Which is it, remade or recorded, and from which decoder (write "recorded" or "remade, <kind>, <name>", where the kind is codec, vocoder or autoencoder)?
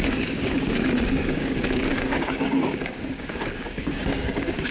remade, codec, DAC